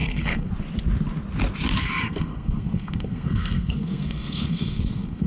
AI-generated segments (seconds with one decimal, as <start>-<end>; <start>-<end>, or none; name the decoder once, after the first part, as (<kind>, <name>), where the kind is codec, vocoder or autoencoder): 0.0-0.5 (codec, SNAC); 1.8-5.3